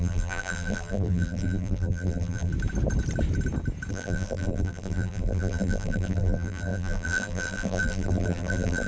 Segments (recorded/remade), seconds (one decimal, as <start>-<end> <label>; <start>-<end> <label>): 0.0-2.5 remade; 2.5-3.9 recorded; 3.9-8.9 remade